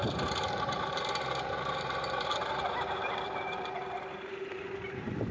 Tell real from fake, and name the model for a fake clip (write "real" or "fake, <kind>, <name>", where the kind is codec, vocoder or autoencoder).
fake, vocoder, BigVGAN v2